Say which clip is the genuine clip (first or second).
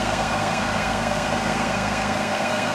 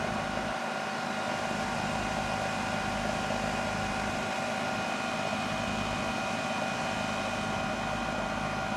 second